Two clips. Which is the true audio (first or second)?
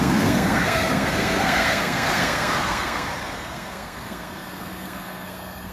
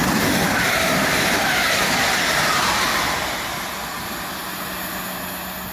second